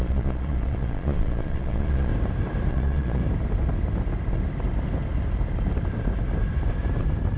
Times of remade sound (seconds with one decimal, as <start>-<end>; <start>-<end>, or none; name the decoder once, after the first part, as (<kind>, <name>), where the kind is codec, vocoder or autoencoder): 0.0-2.1 (vocoder, Vocos); 2.7-3.2

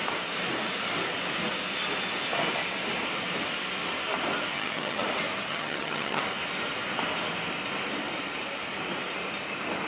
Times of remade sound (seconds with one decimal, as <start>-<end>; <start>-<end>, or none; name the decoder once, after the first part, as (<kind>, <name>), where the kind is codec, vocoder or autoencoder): 4.5-5.0 (vocoder, HiFi-GAN); 5.5-6.2